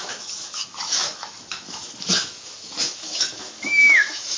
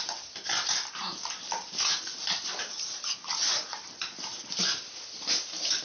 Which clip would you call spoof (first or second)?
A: first